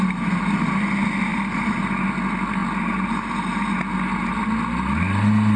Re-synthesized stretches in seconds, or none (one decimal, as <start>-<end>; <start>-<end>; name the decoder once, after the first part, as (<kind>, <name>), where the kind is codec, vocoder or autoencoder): 1.3-1.8 (vocoder, BigVGAN v2)